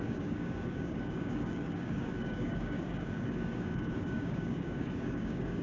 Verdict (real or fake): fake